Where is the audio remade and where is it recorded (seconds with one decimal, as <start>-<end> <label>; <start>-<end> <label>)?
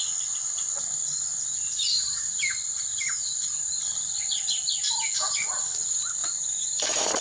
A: 0.0-1.3 recorded; 1.3-5.6 remade; 5.6-6.2 recorded; 6.2-7.2 remade